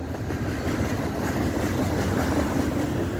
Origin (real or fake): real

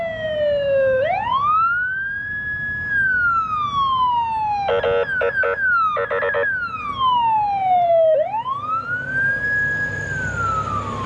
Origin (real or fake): real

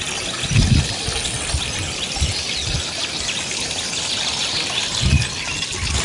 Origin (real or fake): real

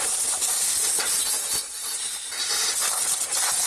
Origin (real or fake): real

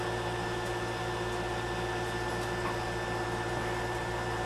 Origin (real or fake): real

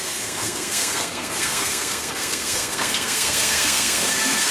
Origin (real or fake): fake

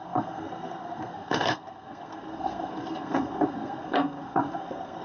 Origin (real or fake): fake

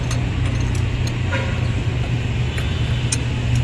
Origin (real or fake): real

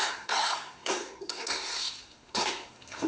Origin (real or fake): fake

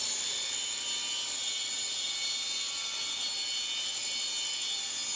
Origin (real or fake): real